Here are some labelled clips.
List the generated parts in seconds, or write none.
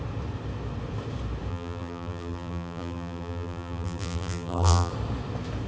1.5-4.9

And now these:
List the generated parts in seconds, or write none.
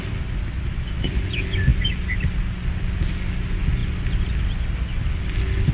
none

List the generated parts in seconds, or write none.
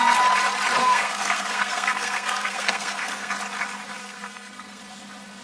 0.8-3.3; 4.0-4.8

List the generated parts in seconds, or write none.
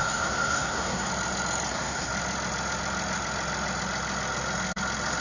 0.0-1.1; 1.7-2.1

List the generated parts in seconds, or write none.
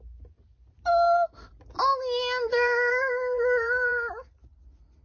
2.5-4.1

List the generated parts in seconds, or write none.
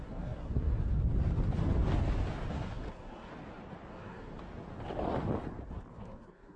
0.0-0.7; 2.5-3.3; 3.9-4.3; 5.9-6.6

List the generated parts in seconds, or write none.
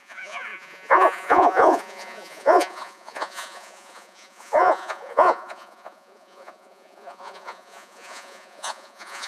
0.0-9.3